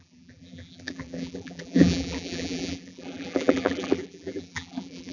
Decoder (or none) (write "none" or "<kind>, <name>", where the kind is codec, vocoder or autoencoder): vocoder, BigVGAN v2